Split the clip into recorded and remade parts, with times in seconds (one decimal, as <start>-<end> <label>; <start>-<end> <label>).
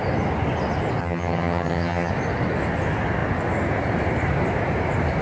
0.0-1.0 recorded; 1.0-2.1 remade; 2.1-5.2 recorded